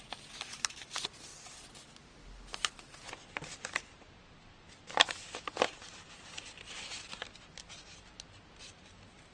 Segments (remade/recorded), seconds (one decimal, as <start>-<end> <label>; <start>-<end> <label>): 0.0-9.3 recorded